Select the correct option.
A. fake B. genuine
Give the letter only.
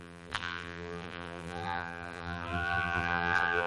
A